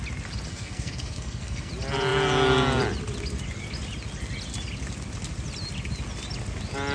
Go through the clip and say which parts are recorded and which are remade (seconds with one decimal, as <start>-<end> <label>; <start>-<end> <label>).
0.0-0.5 recorded; 0.5-1.7 remade; 1.7-6.9 recorded